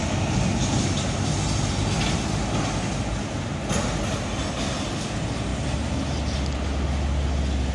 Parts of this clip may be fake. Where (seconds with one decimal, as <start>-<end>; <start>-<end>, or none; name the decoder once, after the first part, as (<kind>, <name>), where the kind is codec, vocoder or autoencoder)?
none